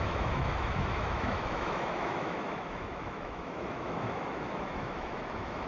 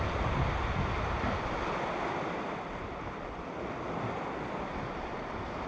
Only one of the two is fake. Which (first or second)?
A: first